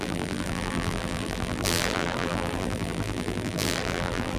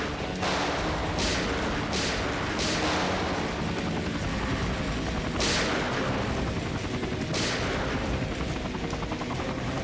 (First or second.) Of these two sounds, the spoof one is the first